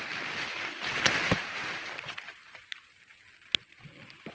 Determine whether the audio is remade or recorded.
recorded